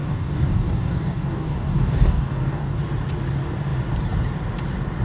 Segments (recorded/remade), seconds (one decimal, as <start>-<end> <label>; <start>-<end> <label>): 0.0-2.8 remade; 2.8-5.0 recorded